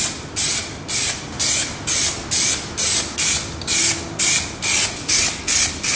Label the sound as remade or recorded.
recorded